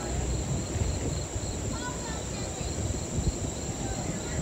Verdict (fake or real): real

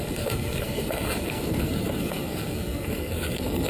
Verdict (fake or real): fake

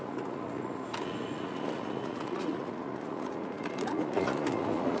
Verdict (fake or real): fake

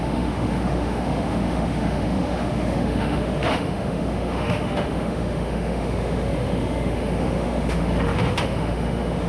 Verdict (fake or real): fake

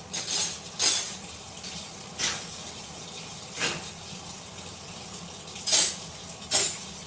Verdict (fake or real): real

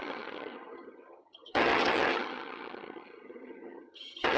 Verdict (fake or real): fake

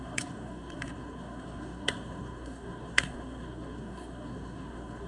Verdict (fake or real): fake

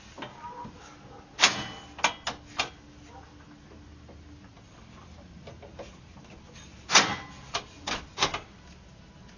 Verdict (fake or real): real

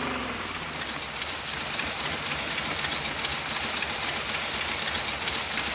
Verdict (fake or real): real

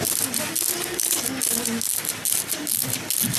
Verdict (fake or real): real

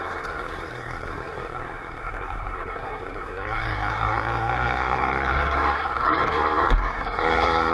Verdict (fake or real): fake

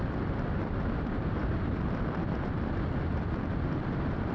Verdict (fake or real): real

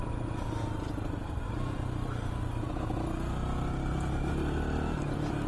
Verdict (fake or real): real